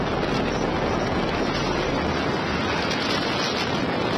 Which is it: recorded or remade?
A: recorded